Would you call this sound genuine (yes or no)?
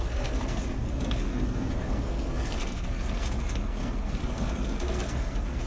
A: no